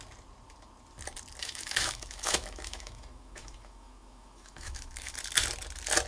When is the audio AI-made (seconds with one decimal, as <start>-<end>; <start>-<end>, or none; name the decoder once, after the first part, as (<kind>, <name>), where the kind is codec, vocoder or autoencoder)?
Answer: 1.4-5.1 (autoencoder, DAC-VAE)